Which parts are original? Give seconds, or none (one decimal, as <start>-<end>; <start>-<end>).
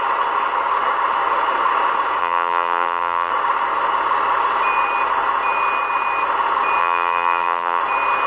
0.0-2.2; 3.3-6.8; 7.8-8.3